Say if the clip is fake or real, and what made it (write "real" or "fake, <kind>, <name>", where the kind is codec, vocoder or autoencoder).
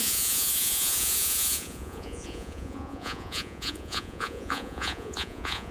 fake, vocoder, Vocos